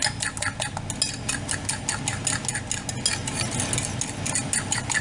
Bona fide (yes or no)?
yes